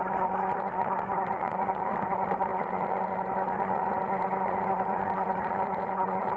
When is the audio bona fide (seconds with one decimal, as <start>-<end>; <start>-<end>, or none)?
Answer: none